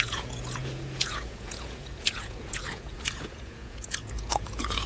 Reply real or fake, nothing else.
fake